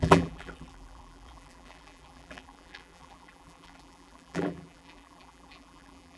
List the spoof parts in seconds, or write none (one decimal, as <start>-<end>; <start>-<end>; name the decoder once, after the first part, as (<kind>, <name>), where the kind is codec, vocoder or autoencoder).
0.0-6.2 (vocoder, BigVGAN v2)